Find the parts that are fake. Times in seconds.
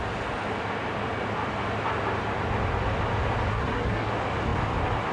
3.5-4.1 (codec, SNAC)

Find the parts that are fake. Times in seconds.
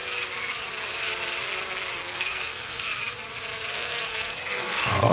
2.0-2.9 (codec, SNAC); 3.7-5.1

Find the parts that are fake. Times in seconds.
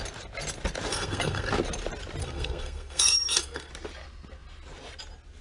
0.9-1.5 (codec, SNAC); 2.2-3.7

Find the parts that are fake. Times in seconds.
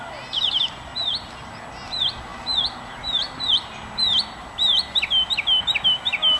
none